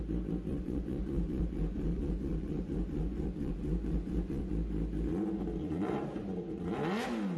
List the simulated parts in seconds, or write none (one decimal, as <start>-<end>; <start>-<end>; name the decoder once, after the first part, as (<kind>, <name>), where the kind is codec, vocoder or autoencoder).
0.5-4.5 (vocoder, Vocos); 5.6-6.7